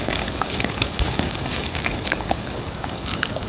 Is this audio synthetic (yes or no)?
yes